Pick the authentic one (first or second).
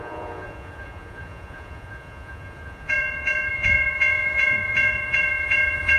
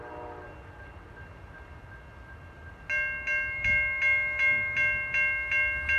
second